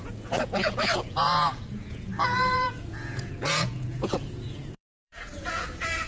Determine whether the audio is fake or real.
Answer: fake